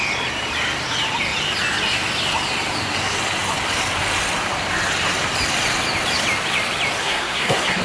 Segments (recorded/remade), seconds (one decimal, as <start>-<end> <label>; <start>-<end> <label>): 0.0-7.0 recorded; 7.0-7.8 remade